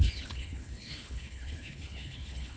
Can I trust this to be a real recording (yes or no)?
no